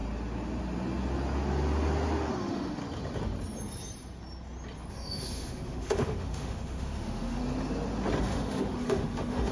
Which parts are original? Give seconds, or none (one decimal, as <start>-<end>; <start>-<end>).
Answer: 0.0-2.4; 2.8-4.9; 7.4-8.2